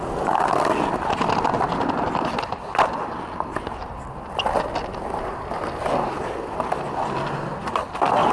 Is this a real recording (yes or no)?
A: yes